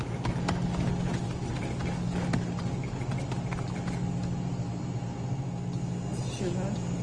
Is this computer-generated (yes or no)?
no